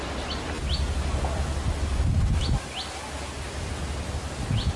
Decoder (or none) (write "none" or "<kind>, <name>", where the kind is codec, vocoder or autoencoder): none